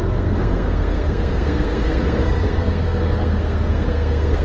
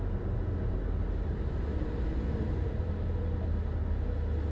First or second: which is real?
second